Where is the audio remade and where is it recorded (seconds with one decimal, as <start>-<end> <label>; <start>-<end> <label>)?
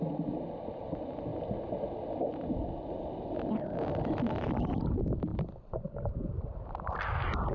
0.0-7.5 recorded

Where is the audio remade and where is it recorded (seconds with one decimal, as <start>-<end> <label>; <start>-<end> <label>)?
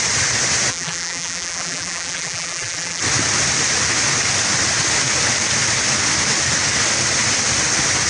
0.0-0.7 recorded; 0.7-3.0 remade; 3.0-8.1 recorded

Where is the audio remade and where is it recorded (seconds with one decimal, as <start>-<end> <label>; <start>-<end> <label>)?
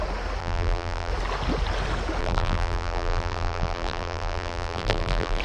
0.0-0.4 recorded; 0.4-1.1 remade; 1.1-2.2 recorded; 2.2-5.4 remade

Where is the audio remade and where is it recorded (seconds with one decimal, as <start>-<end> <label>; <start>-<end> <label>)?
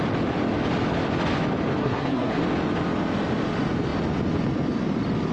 0.0-1.8 recorded; 1.8-2.4 remade; 2.4-5.3 recorded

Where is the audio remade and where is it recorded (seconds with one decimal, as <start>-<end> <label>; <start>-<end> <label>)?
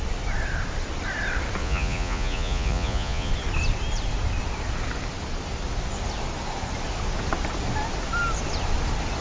0.0-1.6 recorded; 1.6-3.3 remade; 3.3-9.2 recorded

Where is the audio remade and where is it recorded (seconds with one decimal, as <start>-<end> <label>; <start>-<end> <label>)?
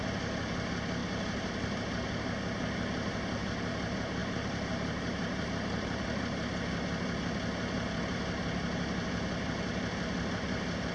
0.0-1.0 recorded; 1.0-1.8 remade; 1.8-4.2 recorded; 4.2-6.2 remade; 6.2-10.9 recorded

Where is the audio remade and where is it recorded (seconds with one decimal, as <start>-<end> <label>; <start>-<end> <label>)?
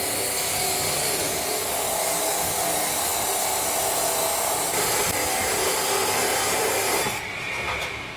0.0-0.5 recorded; 0.5-2.7 remade; 2.7-8.2 recorded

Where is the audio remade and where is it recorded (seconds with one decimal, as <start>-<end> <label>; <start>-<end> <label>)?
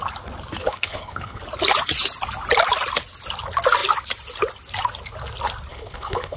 0.0-0.6 recorded; 0.6-1.4 remade; 1.4-5.7 recorded; 5.7-6.4 remade